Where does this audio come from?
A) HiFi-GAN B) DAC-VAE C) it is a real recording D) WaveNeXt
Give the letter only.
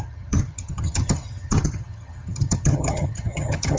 A